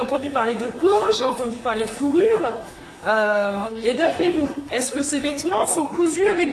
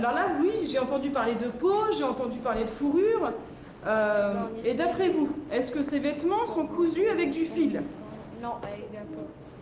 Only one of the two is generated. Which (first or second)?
first